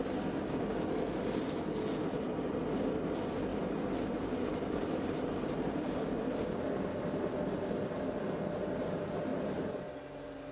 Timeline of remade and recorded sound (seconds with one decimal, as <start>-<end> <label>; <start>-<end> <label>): 0.0-3.5 recorded; 3.5-6.9 remade; 6.9-9.3 recorded; 9.3-9.9 remade; 9.9-10.5 recorded